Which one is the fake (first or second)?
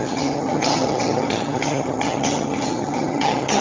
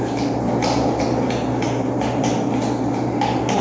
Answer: first